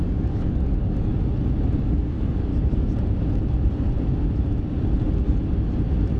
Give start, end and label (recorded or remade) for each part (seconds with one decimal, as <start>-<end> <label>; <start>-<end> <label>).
0.0-1.1 remade; 1.1-1.8 recorded; 1.8-2.5 remade; 2.5-6.2 recorded